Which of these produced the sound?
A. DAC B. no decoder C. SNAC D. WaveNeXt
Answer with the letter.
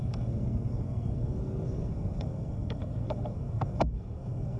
C